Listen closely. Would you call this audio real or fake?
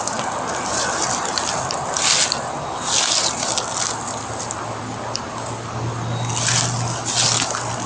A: real